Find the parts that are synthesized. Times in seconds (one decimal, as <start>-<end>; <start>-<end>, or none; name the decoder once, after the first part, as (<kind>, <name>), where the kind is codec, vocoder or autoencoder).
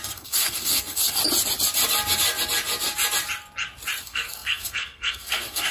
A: 0.0-1.2 (codec, SNAC); 4.0-5.7